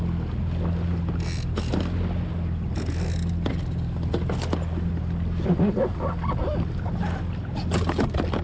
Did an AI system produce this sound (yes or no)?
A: no